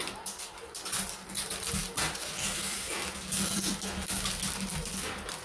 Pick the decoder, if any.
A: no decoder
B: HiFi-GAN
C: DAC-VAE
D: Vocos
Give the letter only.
A